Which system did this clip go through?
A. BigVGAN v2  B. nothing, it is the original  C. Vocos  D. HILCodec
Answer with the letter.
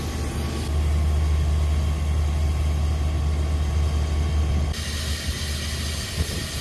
B